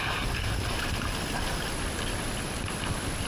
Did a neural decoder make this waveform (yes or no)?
no